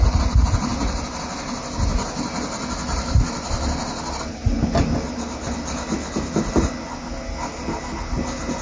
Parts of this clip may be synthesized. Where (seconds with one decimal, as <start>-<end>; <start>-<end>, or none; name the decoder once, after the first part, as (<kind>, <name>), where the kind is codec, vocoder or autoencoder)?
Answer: none